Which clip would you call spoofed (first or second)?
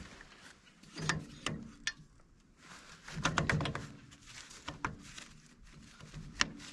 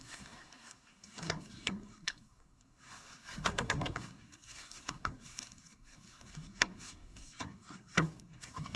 second